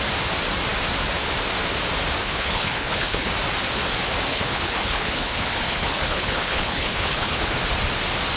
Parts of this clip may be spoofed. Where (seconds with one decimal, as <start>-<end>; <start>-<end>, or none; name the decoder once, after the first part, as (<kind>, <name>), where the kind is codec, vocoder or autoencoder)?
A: 2.2-3.3 (codec, HILCodec); 4.3-7.6